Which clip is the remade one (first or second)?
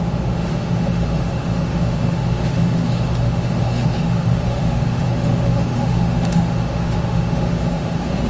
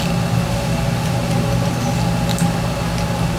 first